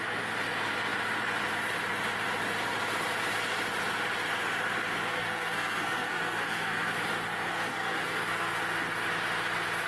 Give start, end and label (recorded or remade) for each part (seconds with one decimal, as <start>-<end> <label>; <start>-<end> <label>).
0.0-5.1 recorded; 5.1-6.9 remade; 6.9-7.5 recorded; 7.5-8.6 remade; 8.6-9.9 recorded